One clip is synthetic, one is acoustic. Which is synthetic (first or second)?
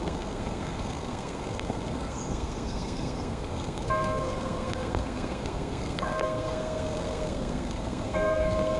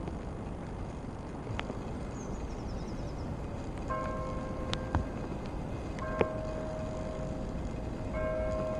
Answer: first